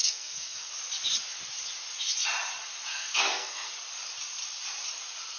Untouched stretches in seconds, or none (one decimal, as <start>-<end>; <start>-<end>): 0.7-2.9; 3.7-5.4